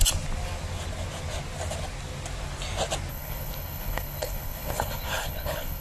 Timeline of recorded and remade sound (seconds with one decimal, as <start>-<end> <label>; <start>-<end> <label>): 0.0-3.1 recorded; 3.1-5.8 remade